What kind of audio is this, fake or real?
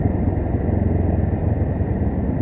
real